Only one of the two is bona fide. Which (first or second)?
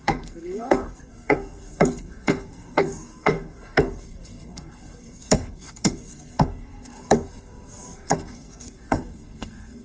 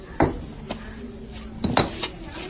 second